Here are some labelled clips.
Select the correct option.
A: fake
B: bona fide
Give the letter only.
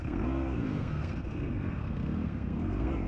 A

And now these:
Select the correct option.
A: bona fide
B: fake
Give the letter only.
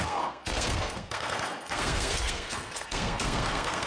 B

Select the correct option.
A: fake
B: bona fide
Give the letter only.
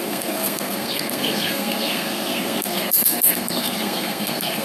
A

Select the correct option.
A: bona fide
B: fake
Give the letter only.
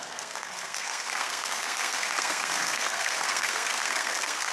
B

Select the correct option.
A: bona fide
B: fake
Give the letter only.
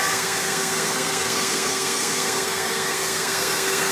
B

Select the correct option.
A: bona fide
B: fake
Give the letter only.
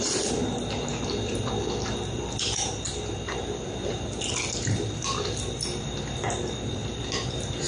A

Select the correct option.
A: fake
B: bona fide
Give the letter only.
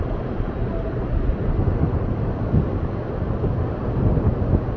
B